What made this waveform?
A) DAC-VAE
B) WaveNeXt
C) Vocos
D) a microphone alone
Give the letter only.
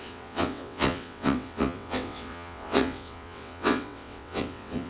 B